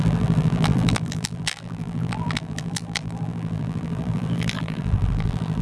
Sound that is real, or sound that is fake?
fake